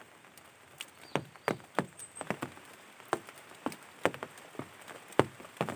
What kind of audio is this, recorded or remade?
recorded